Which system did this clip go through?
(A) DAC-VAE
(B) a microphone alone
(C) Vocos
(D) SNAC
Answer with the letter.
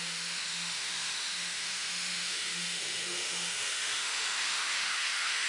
A